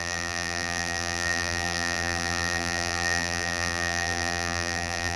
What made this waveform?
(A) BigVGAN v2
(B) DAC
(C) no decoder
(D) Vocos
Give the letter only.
A